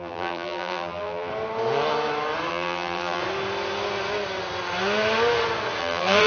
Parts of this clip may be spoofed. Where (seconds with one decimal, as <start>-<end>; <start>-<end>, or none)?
0.0-1.3; 2.5-3.2; 5.8-6.3